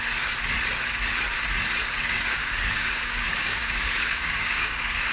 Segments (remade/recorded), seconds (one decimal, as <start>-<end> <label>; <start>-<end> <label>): 0.0-2.0 recorded; 2.0-5.1 remade